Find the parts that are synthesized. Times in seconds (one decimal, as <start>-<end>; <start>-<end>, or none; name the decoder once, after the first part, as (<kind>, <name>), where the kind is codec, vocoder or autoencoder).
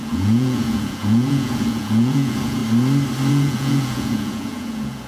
0.0-2.6 (vocoder, Vocos); 3.3-5.1